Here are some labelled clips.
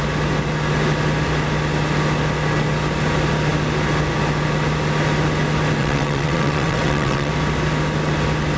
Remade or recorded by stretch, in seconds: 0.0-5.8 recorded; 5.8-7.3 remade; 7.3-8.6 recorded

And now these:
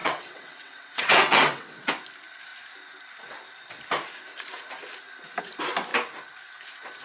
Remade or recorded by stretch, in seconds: 0.0-1.9 remade; 1.9-7.0 recorded

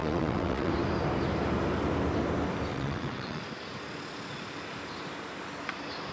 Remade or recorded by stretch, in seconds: 0.0-0.7 remade; 0.7-2.7 recorded; 2.7-3.4 remade; 3.4-6.1 recorded

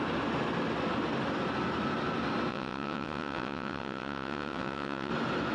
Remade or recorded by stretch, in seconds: 0.0-2.5 recorded; 2.5-5.1 remade; 5.1-5.5 recorded